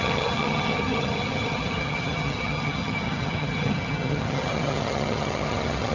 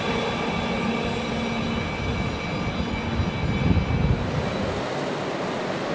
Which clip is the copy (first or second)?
first